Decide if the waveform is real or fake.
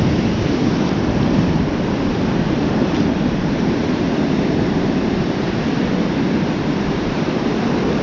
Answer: fake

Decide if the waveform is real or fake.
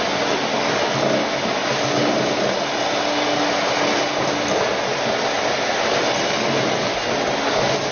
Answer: real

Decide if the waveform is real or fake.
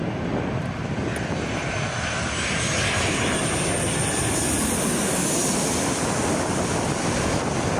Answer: real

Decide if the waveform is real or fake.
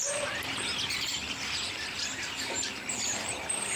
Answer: fake